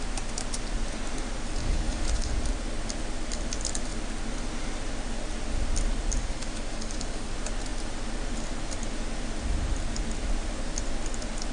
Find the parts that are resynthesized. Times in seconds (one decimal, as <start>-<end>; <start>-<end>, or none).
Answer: 1.6-2.3; 6.2-7.3